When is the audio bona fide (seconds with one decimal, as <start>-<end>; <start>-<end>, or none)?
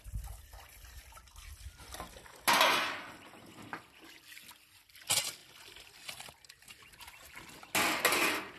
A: 0.0-8.6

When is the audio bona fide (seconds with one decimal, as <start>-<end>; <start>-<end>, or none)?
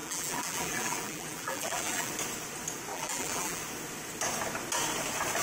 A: 2.1-2.9; 3.6-5.4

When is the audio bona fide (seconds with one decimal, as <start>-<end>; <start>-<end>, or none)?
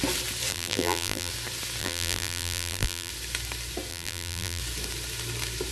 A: 0.0-0.5; 1.3-1.8; 3.1-3.9; 4.6-5.7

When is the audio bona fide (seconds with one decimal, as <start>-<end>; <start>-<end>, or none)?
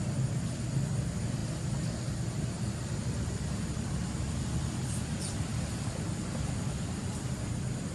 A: none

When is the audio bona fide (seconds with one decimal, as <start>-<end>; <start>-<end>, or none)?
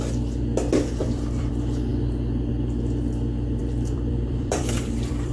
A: 0.0-1.0; 1.5-3.6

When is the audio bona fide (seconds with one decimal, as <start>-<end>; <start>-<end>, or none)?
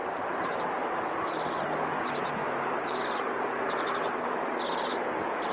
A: 2.0-2.4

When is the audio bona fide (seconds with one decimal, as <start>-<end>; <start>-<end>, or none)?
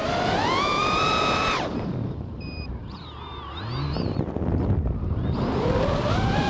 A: 0.0-0.8; 2.2-6.5